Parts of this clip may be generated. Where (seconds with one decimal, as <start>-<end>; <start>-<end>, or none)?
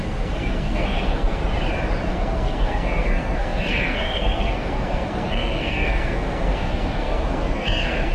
0.0-1.4; 2.1-8.1